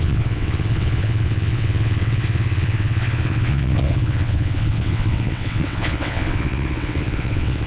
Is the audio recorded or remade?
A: remade